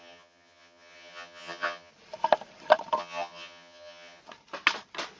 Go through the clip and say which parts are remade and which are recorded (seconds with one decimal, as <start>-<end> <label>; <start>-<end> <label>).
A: 0.0-1.9 remade; 1.9-3.0 recorded; 3.0-4.2 remade; 4.2-5.2 recorded

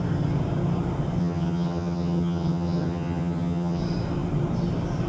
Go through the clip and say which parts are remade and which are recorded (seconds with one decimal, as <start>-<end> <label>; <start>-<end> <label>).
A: 0.0-1.2 recorded; 1.2-3.8 remade; 3.8-5.1 recorded

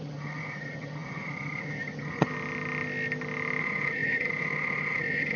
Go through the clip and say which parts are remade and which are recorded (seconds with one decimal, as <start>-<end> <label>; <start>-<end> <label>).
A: 0.0-2.3 remade; 2.3-3.6 recorded; 3.6-5.4 remade

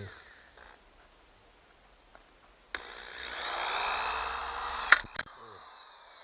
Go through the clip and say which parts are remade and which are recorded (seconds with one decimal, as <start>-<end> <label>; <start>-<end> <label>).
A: 0.0-6.2 recorded

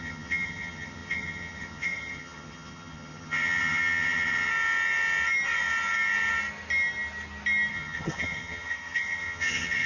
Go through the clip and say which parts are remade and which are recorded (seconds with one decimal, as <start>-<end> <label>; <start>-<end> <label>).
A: 0.0-4.5 remade; 4.5-7.7 recorded; 7.7-9.9 remade

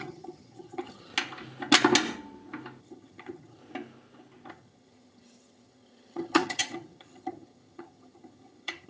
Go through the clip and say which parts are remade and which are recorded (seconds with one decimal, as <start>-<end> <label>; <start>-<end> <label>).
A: 0.0-1.1 remade; 1.1-2.8 recorded; 2.8-3.6 remade; 3.6-4.5 recorded; 4.5-8.9 remade

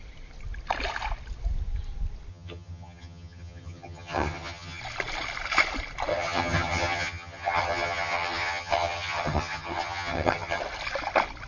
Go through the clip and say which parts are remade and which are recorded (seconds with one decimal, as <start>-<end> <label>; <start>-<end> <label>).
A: 0.0-2.3 recorded; 2.3-4.8 remade; 4.8-6.1 recorded; 6.1-10.6 remade; 10.6-11.5 recorded